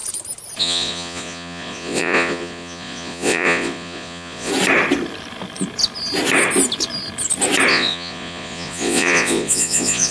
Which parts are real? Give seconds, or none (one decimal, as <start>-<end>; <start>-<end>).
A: 0.0-0.6; 4.5-7.7